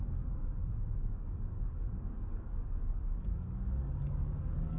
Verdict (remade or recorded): remade